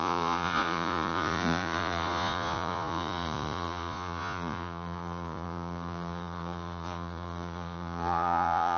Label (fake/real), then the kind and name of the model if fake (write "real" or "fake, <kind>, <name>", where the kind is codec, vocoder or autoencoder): fake, vocoder, Vocos